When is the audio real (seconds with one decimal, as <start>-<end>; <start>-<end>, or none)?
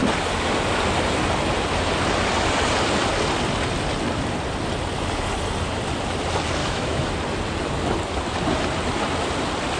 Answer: 0.0-6.6; 7.1-9.8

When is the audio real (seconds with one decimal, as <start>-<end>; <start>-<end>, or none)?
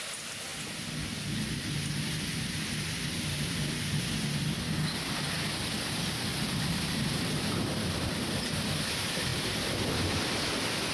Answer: 0.0-6.3; 8.1-10.9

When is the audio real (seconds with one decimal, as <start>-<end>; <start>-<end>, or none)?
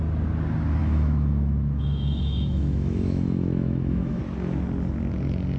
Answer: 0.0-0.8; 4.2-5.6